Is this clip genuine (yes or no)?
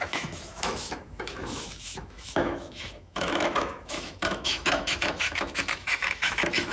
no